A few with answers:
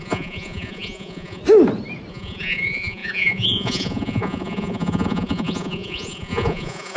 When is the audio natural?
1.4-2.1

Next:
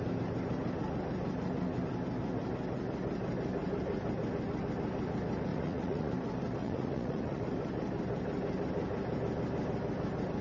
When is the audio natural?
0.0-5.5; 6.1-6.6; 7.4-10.4

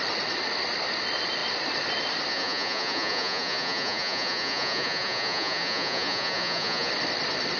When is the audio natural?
0.0-2.3; 6.9-7.6

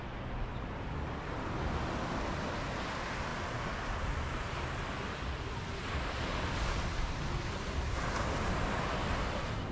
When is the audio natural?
0.0-9.7